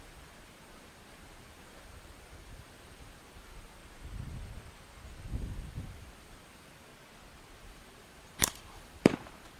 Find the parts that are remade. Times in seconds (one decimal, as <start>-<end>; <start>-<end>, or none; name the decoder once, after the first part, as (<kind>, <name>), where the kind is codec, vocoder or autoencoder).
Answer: 0.0-3.8 (vocoder, BigVGAN v2); 5.3-6.9; 7.6-9.6